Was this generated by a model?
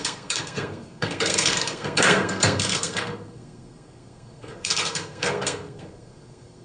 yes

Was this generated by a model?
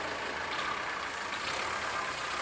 yes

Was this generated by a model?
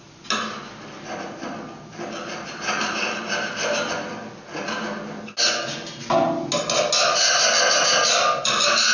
no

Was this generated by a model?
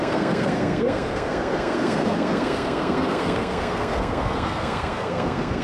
yes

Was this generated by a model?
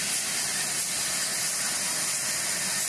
no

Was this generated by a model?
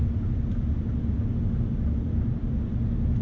no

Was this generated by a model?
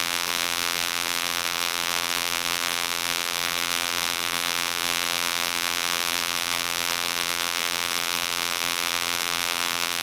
yes